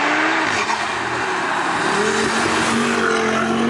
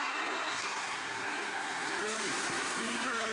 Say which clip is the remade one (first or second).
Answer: second